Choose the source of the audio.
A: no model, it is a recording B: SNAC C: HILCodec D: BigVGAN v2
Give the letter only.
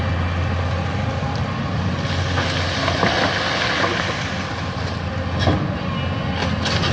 A